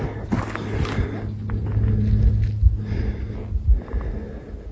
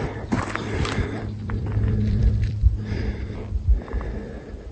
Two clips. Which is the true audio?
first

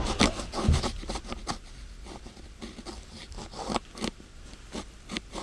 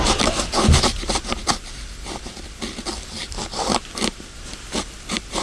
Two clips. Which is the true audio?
first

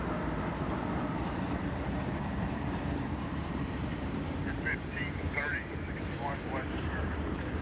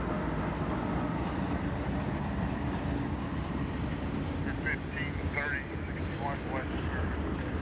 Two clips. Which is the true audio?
second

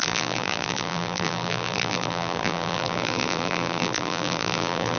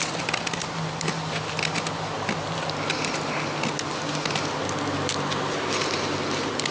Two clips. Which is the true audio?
second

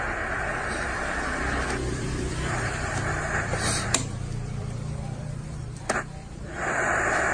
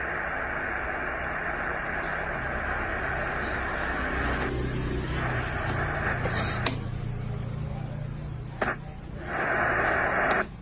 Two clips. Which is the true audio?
second